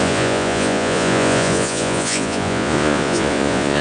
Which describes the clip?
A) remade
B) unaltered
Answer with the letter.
A